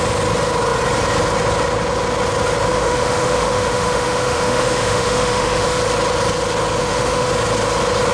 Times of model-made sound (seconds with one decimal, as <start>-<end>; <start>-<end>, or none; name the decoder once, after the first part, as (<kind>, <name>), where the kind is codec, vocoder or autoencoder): 2.7-5.8 (autoencoder, DAC-VAE); 6.8-7.3